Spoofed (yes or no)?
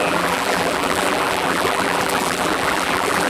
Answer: yes